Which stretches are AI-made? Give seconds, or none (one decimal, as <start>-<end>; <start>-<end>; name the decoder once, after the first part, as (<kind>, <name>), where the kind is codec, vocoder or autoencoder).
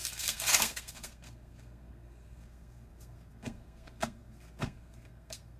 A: 0.0-5.6 (codec, SNAC)